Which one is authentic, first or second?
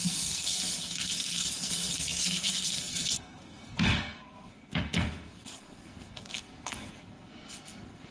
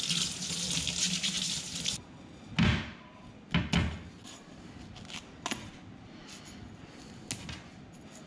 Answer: second